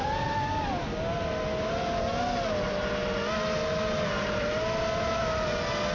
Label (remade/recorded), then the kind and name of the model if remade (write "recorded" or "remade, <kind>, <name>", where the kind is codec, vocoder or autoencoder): recorded